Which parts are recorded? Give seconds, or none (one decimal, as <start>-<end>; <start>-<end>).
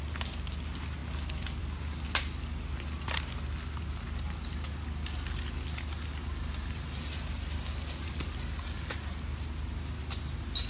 0.0-10.7